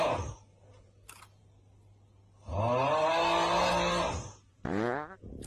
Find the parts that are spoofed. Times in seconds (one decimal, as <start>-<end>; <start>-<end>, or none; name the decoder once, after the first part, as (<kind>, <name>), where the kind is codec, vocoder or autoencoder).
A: none